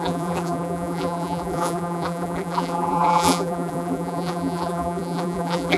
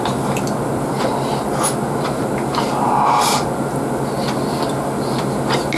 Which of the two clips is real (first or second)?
second